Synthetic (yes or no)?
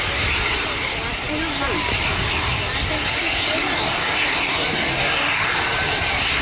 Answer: no